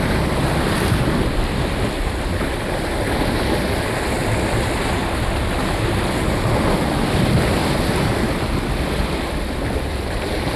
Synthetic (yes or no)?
no